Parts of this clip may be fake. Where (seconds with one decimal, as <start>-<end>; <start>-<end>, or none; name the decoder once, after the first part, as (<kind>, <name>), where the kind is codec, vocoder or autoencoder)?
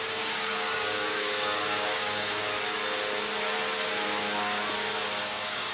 0.0-2.4 (codec, DAC); 5.2-5.7